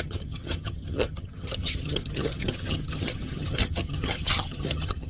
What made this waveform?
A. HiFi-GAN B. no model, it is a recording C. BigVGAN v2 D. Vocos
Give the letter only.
A